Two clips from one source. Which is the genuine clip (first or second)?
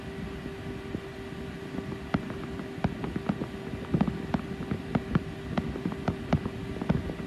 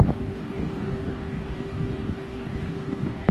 first